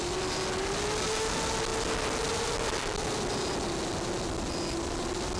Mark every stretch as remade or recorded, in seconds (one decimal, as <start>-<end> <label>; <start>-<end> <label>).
0.0-5.4 recorded